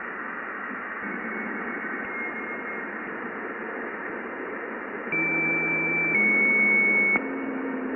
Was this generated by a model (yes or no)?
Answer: no